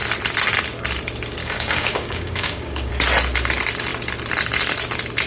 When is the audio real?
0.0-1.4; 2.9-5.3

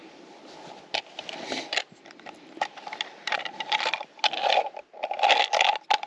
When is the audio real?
0.0-6.1

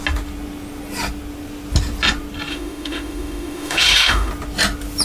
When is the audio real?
0.0-2.5; 4.3-5.0

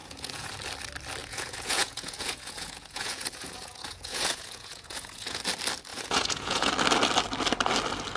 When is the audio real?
0.5-1.2; 5.4-5.9; 6.7-8.2

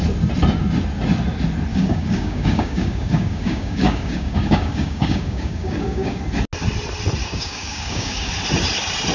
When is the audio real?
0.0-1.7; 6.2-7.2; 8.3-9.1

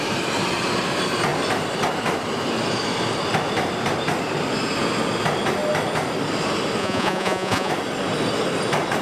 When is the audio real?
0.0-6.8; 7.7-9.0